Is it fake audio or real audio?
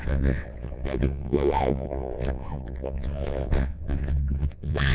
fake